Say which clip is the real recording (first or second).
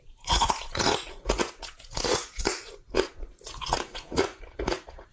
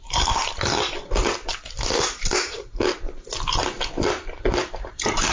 second